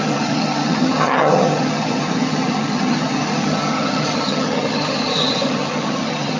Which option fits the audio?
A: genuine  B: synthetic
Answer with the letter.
B